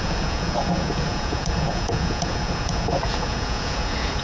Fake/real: fake